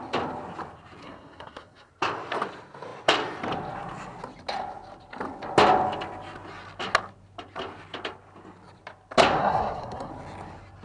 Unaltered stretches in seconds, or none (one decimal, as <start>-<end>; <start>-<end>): 0.0-1.0; 1.9-9.4; 10.1-10.8